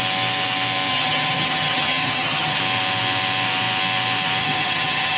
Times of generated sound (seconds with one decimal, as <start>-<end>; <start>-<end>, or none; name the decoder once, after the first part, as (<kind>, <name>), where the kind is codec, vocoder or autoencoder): 0.9-2.6 (vocoder, HiFi-GAN); 4.4-5.2